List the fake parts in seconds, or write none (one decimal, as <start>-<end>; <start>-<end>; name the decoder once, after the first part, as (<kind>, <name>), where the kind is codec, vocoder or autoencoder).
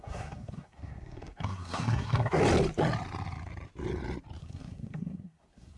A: 0.0-2.4 (codec, SNAC); 4.4-5.8